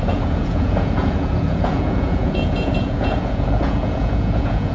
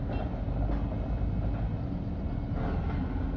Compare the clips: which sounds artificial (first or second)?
first